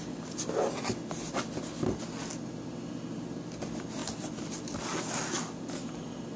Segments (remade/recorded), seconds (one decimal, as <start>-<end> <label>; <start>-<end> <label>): 0.0-6.4 recorded